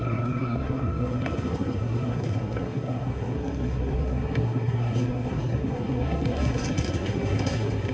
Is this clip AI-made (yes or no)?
yes